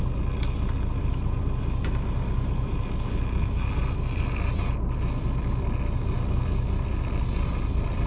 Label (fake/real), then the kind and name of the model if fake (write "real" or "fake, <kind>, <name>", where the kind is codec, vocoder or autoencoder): real